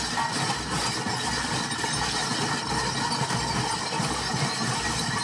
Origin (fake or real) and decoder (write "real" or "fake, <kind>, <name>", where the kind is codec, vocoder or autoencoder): real